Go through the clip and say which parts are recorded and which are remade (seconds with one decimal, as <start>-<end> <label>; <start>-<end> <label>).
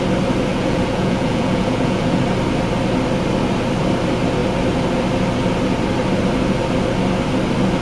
0.0-0.5 recorded; 0.5-2.2 remade; 2.2-7.8 recorded